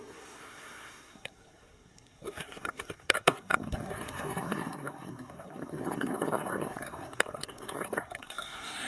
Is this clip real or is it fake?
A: fake